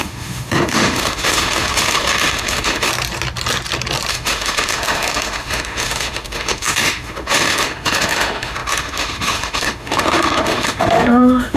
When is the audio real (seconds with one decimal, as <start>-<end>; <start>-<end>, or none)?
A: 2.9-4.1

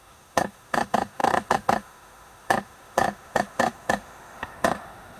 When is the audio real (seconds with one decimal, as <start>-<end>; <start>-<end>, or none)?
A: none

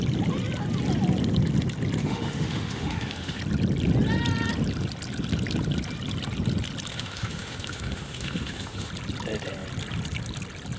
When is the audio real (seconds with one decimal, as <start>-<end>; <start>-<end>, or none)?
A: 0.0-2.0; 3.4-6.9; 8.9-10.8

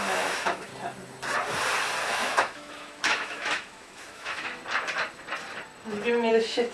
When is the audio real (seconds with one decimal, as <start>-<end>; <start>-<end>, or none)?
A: 0.7-2.1; 4.6-6.3

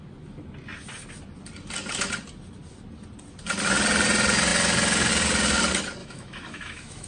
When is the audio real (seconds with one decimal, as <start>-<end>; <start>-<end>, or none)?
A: 0.0-6.0

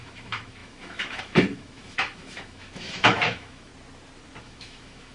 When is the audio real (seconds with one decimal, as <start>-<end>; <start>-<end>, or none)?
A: 3.7-4.4

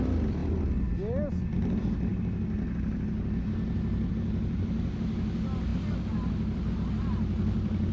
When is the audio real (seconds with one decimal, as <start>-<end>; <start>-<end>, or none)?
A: 0.0-7.9

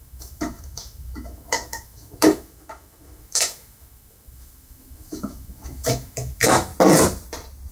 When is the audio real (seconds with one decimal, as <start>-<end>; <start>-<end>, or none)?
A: 6.7-7.7